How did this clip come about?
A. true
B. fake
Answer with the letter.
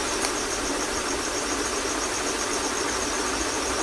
A